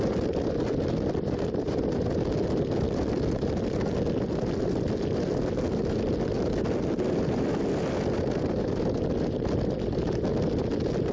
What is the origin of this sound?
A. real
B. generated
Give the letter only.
A